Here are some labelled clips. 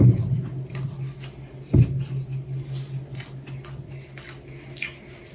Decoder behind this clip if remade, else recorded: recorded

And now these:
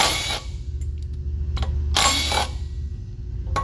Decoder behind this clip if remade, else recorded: recorded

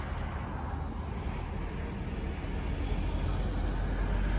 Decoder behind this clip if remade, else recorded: recorded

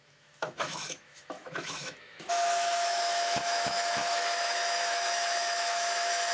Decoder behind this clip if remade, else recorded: remade, autoencoder, DAC-VAE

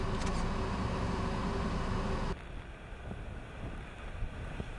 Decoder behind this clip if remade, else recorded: recorded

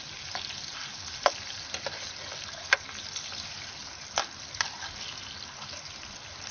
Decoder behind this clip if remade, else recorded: recorded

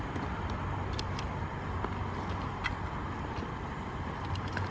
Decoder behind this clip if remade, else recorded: recorded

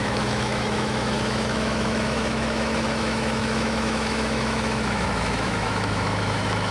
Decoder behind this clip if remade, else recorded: remade, autoencoder, DAC-VAE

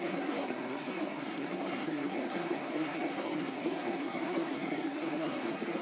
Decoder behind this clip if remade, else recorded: remade, codec, SNAC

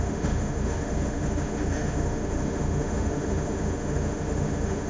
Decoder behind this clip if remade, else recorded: remade, autoencoder, DAC-VAE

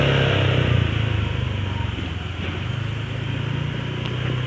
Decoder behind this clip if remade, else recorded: recorded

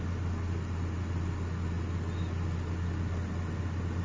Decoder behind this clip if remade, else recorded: recorded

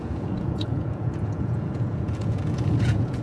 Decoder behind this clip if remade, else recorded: remade, vocoder, Vocos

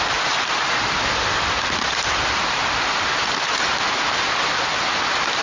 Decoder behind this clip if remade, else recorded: recorded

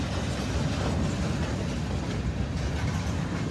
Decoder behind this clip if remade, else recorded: recorded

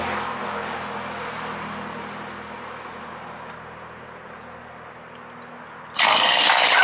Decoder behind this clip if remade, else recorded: recorded